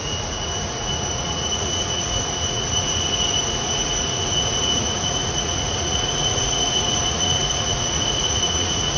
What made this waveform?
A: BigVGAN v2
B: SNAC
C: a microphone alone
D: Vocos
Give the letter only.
D